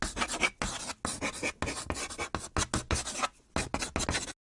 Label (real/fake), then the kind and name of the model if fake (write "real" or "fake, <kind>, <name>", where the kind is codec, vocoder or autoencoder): real